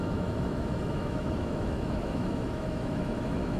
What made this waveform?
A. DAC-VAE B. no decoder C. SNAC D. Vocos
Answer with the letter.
A